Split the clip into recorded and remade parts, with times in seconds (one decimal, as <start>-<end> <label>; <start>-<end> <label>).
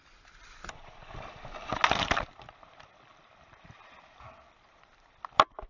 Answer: 0.0-1.7 remade; 1.7-2.3 recorded; 2.3-5.7 remade